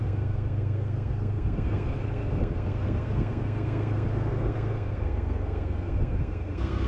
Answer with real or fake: fake